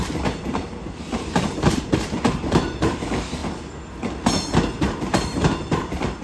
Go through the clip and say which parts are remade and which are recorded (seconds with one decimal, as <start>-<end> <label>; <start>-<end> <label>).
0.0-3.4 remade; 3.4-4.7 recorded; 4.7-6.2 remade